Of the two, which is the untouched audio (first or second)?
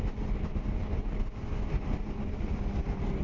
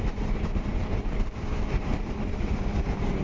first